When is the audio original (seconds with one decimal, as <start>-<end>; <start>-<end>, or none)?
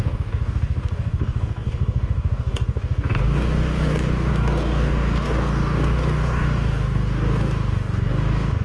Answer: none